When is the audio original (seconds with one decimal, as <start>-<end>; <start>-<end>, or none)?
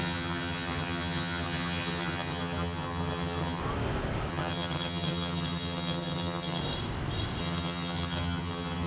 3.6-4.3; 6.6-7.4